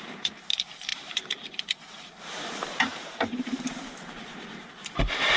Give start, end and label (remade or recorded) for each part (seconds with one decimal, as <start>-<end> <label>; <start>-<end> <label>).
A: 0.0-5.4 remade